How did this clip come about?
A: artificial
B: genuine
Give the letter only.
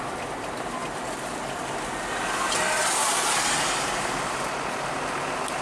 B